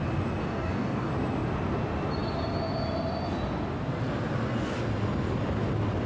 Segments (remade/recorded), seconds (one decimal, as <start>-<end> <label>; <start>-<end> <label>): 0.0-0.4 recorded; 0.4-1.1 remade; 1.1-6.1 recorded